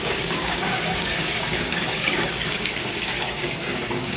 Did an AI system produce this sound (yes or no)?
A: yes